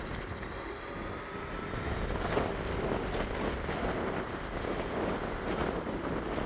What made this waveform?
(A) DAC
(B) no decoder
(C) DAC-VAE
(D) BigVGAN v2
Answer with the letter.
B